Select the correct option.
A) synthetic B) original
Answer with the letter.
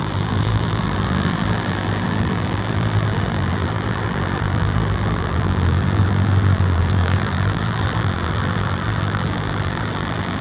A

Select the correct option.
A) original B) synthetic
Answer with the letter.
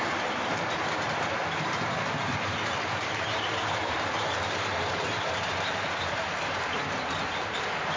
B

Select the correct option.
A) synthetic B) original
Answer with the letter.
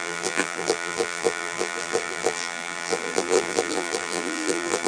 A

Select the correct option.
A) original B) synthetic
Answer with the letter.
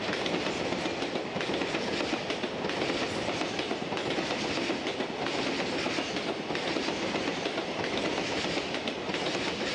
A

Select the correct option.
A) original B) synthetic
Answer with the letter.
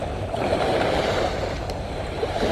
B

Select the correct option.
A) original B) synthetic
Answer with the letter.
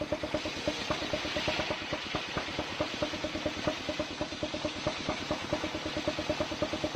A